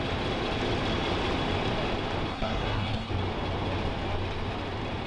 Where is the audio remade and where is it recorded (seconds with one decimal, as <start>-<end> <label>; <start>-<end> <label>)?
0.0-2.3 recorded; 2.3-3.1 remade; 3.1-5.1 recorded